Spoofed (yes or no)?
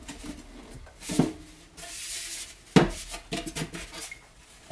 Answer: no